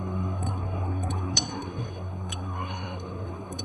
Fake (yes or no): yes